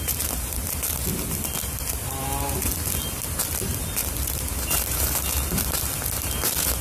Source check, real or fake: real